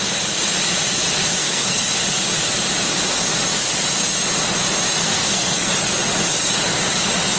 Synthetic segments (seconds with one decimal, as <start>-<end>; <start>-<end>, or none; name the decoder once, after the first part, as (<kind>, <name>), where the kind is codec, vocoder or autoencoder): 1.4-2.0 (codec, SNAC); 5.0-5.7